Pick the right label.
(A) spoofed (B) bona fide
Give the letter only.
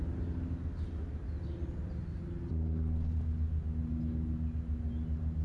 B